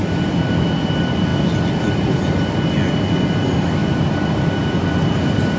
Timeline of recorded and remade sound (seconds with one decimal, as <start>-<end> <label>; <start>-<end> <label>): 0.0-5.6 recorded

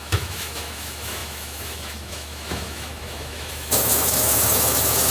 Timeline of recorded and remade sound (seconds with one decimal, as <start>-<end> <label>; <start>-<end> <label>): 0.0-5.1 remade

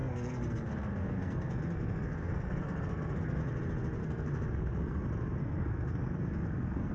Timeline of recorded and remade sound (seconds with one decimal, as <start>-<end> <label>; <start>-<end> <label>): 0.0-3.4 remade; 3.4-4.0 recorded; 4.0-5.0 remade; 5.0-5.4 recorded; 5.4-6.9 remade

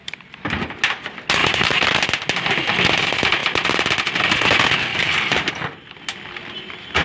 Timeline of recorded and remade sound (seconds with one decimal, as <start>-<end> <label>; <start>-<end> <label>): 0.0-0.6 remade; 0.6-1.4 recorded; 1.4-2.0 remade; 2.0-4.9 recorded; 4.9-5.5 remade; 5.5-7.0 recorded

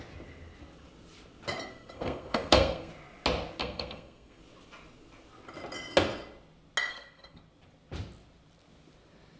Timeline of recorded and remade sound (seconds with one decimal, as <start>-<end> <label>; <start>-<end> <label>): 0.0-1.7 recorded; 1.7-2.9 remade; 2.9-3.6 recorded; 3.6-4.4 remade; 4.4-6.9 recorded; 6.9-7.4 remade; 7.4-9.4 recorded

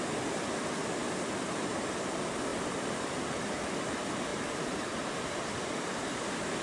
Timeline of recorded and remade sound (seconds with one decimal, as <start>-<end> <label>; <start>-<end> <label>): 0.0-2.5 recorded; 2.5-3.1 remade; 3.1-4.3 recorded; 4.3-6.6 remade